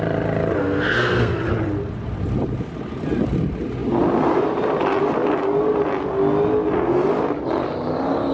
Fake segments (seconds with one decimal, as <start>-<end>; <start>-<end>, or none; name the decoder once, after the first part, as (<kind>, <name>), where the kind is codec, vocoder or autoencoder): 0.6-1.4 (codec, SNAC)